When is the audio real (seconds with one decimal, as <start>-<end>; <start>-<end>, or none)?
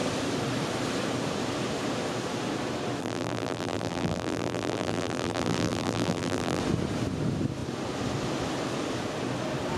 0.0-3.0; 6.6-9.8